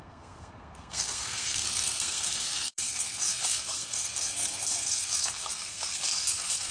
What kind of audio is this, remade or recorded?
remade